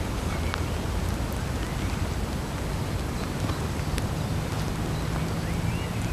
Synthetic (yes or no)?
no